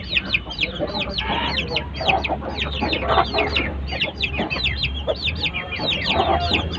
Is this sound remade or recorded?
remade